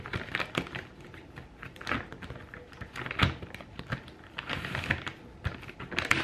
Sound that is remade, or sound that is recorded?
recorded